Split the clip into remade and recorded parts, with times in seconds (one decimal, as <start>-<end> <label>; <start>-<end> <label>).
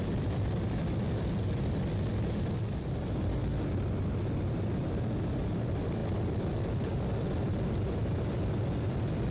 0.0-3.5 remade; 3.5-5.6 recorded; 5.6-9.3 remade